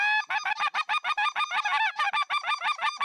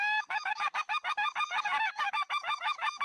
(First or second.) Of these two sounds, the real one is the first